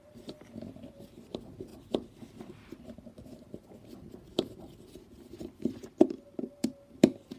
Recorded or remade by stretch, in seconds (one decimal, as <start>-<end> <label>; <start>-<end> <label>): 0.0-7.4 recorded